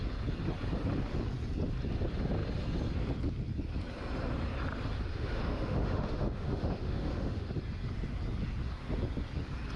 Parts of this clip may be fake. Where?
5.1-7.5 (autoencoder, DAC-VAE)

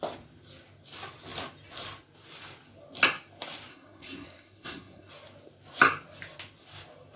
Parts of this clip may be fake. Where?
3.7-5.1 (codec, SNAC)

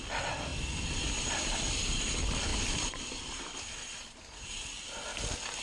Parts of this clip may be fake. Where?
none

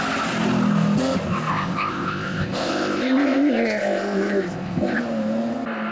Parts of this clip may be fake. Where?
1.5-5.0 (codec, ZipCodec)

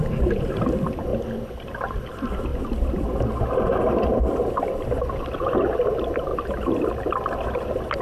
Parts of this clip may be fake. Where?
none

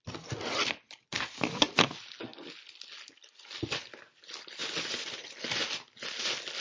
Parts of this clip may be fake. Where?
none

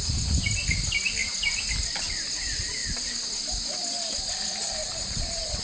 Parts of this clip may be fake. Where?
4.8-5.6 (vocoder, Vocos)

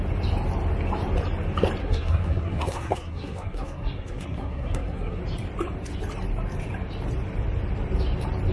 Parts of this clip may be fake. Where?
1.8-5.2 (codec, SNAC)